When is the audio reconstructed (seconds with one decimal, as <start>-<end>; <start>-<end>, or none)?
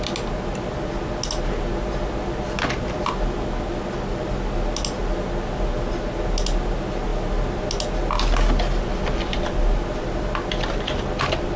none